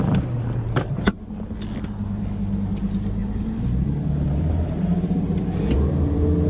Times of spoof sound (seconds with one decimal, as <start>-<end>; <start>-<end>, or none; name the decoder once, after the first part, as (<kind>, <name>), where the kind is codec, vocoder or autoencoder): 3.2-5.4 (vocoder, BigVGAN v2)

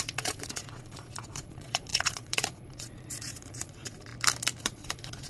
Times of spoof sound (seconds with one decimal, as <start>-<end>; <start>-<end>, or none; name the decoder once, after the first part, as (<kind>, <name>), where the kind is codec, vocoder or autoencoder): 0.0-4.1 (vocoder, Vocos); 4.6-5.3

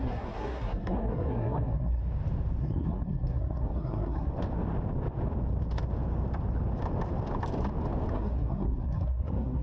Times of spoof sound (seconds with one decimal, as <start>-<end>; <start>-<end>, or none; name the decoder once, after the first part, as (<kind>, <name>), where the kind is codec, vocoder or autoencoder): 0.0-2.0 (codec, SNAC); 2.6-4.3; 8.1-9.6

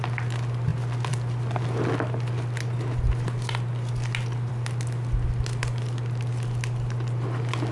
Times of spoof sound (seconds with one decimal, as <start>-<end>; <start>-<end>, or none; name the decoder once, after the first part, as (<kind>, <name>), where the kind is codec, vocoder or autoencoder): none